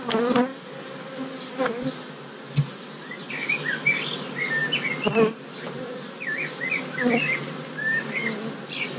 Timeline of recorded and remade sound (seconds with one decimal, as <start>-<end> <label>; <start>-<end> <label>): 0.0-9.0 recorded